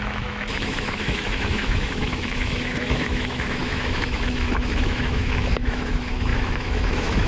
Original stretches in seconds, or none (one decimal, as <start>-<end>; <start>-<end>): none